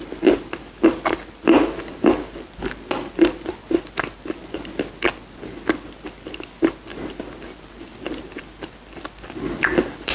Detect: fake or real real